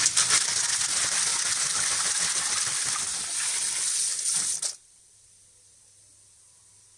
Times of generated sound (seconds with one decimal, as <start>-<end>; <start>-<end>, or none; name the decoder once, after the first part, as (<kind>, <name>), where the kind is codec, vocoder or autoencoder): none